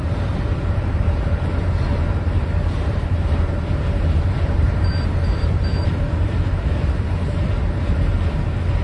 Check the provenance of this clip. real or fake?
fake